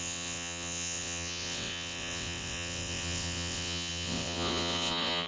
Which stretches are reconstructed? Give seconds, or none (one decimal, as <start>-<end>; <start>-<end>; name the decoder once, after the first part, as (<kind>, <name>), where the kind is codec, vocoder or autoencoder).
0.0-5.3 (vocoder, WaveNeXt)